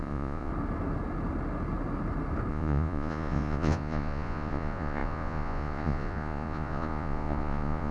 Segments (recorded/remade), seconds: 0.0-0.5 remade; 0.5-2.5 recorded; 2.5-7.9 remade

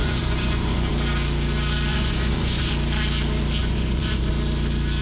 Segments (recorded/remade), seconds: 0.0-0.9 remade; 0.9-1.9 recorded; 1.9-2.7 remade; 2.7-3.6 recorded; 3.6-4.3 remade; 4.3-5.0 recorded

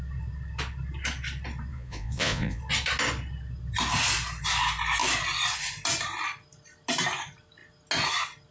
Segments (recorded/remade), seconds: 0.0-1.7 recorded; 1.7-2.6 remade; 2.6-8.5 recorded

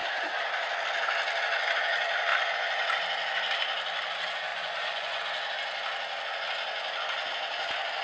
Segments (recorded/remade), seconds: 0.0-4.5 recorded; 4.5-5.2 remade; 5.2-8.0 recorded

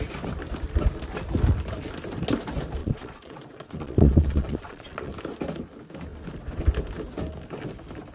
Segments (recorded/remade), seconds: 0.0-2.8 recorded; 2.8-5.1 remade; 5.1-8.1 recorded